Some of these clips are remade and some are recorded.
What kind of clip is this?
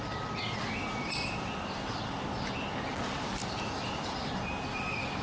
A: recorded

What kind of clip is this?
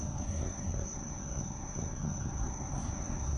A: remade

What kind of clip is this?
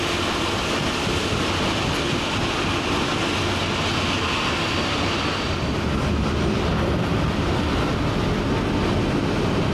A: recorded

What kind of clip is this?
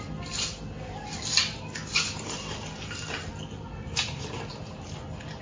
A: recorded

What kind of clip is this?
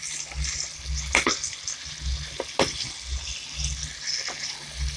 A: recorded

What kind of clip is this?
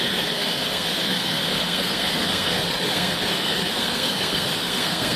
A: remade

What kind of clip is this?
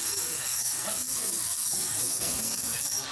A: remade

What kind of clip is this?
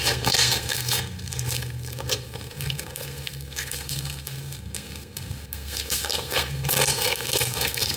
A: remade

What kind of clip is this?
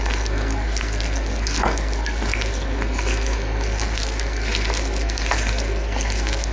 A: remade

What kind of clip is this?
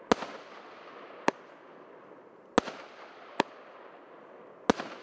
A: recorded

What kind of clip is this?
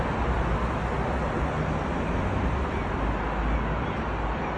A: recorded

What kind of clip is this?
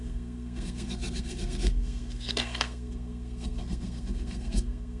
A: remade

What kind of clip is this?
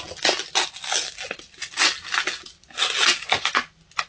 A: recorded